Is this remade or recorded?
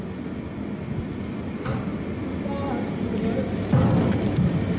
recorded